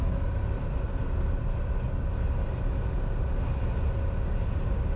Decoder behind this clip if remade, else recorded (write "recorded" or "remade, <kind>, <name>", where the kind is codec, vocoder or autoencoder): recorded